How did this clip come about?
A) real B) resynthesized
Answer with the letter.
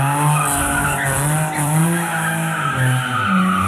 A